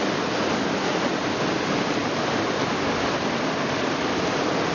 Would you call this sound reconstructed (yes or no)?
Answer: no